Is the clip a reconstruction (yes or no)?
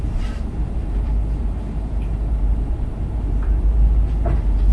yes